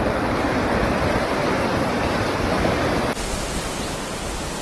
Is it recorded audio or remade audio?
recorded